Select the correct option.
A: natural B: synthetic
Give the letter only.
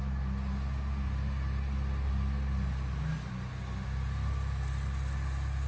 A